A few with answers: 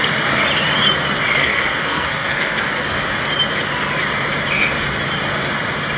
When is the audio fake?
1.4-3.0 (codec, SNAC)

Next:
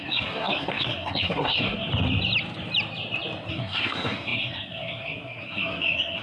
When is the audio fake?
0.0-1.9 (codec, SNAC); 3.5-6.2

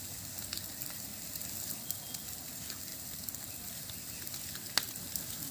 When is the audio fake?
none

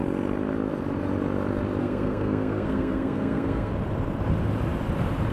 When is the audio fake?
1.8-3.7 (codec, SNAC)

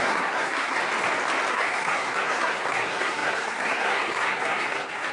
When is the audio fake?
0.0-0.8 (codec, SNAC); 1.5-5.1

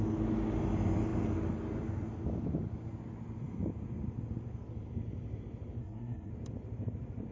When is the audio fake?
5.8-6.3 (codec, SNAC)